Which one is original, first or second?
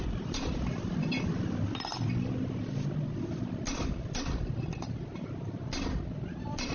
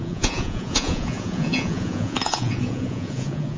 first